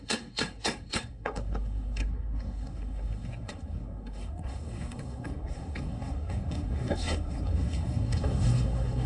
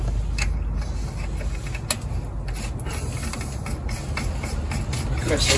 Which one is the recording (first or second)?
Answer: second